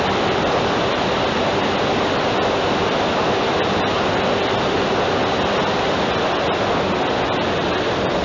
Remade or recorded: recorded